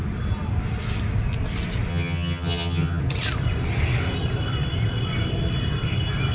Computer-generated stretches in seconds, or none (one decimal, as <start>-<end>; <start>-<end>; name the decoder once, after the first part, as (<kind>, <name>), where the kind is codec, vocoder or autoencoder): 1.9-3.0 (vocoder, HiFi-GAN)